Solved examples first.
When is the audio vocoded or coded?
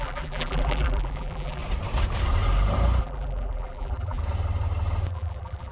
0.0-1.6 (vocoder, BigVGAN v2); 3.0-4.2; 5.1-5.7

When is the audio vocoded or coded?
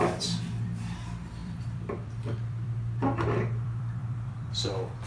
0.0-5.1 (vocoder, BigVGAN v2)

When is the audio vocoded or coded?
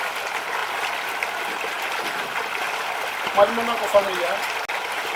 none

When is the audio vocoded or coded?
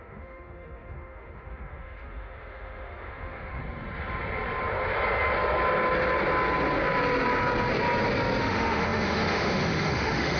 0.0-3.6 (autoencoder, DAC-VAE); 8.4-10.4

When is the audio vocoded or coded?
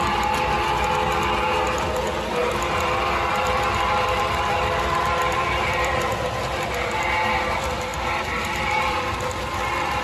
2.4-6.1 (vocoder, BigVGAN v2); 7.9-9.2